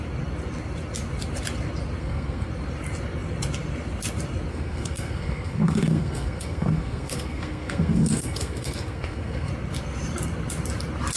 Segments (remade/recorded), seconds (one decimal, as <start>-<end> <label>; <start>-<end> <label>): 0.0-2.0 recorded; 2.0-2.5 remade; 2.5-4.5 recorded; 4.5-9.5 remade; 9.5-11.2 recorded